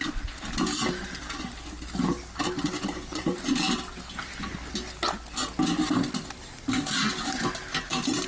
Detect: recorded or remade recorded